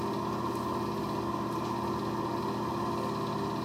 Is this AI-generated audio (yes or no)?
no